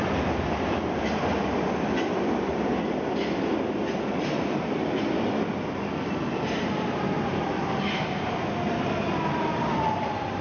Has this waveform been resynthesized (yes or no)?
no